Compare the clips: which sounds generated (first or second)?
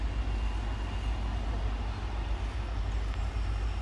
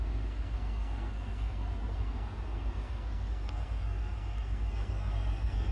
second